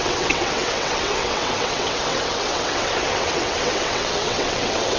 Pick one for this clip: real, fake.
fake